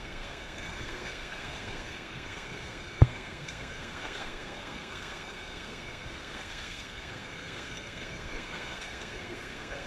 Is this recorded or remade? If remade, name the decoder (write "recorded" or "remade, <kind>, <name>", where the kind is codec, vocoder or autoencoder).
remade, codec, SNAC